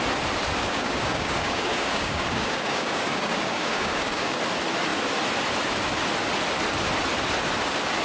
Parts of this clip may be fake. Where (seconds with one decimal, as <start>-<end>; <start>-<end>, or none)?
0.6-4.4